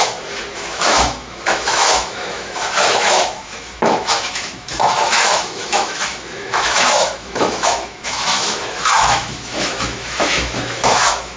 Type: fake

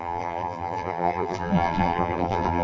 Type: fake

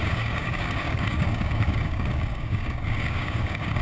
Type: fake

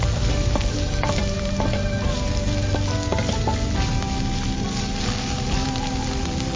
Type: real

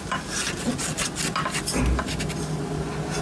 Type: real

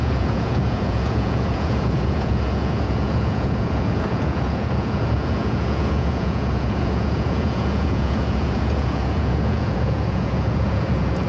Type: fake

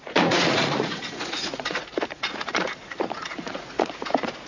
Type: fake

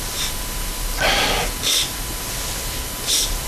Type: real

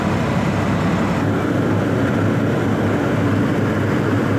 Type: real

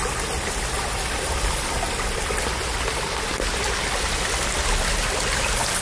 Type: real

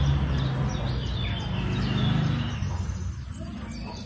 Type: real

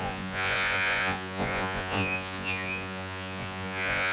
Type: fake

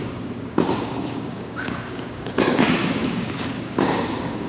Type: fake